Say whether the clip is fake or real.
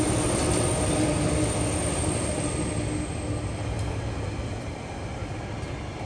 real